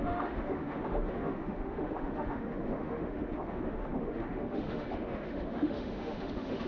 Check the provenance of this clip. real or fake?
fake